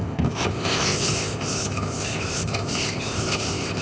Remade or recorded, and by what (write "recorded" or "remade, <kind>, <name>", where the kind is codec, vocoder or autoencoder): remade, codec, ZipCodec